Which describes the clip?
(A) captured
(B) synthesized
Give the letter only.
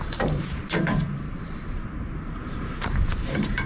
B